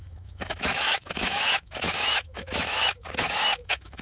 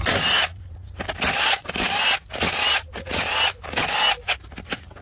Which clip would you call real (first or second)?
second